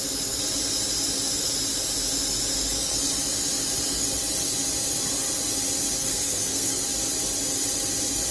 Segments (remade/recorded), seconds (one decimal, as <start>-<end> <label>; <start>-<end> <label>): 0.0-6.0 recorded; 6.0-6.8 remade; 6.8-8.3 recorded